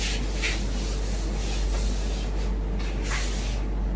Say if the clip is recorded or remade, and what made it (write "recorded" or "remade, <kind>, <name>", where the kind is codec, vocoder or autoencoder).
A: recorded